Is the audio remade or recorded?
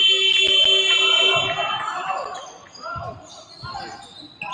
recorded